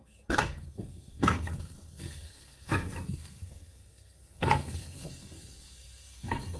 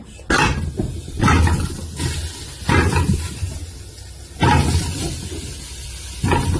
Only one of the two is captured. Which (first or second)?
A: second